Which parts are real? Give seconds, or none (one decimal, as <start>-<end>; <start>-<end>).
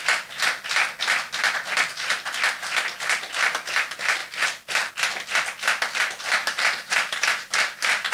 0.0-6.4